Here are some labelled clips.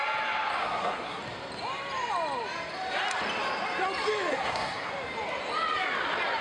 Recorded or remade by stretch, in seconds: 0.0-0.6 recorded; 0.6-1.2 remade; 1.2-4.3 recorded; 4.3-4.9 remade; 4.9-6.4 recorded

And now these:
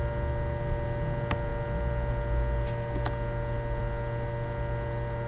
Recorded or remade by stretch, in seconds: 0.0-5.3 recorded

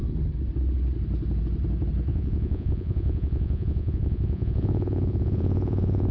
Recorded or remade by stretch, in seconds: 0.0-2.1 recorded; 2.1-6.1 remade

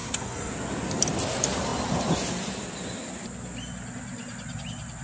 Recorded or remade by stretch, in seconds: 0.0-0.5 remade; 0.5-5.0 recorded

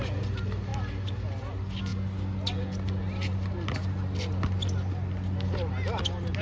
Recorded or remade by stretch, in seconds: 0.0-6.4 recorded

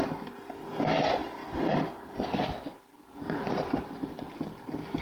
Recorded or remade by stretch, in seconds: 0.0-1.4 recorded; 1.4-4.4 remade; 4.4-5.0 recorded

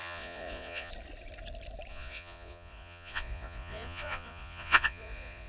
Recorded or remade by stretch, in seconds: 0.0-0.9 remade; 0.9-1.9 recorded; 1.9-5.5 remade